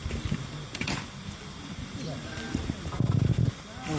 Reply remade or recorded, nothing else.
remade